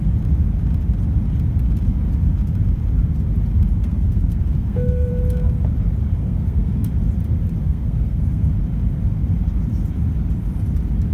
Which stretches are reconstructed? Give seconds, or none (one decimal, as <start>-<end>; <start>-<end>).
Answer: 3.8-5.1; 6.2-6.9; 7.6-8.5